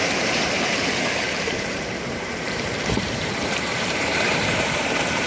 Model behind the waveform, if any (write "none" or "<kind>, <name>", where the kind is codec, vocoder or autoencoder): vocoder, BigVGAN v2